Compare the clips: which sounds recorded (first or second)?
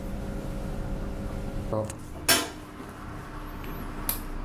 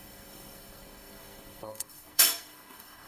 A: first